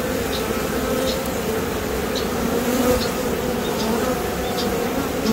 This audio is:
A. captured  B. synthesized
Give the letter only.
A